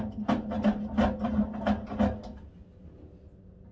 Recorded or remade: recorded